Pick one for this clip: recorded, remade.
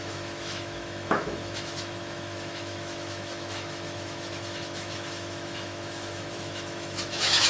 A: remade